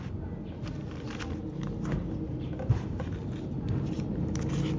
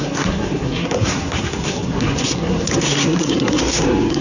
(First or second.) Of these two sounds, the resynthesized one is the second